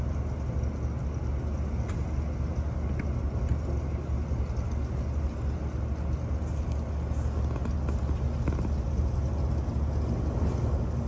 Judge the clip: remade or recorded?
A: recorded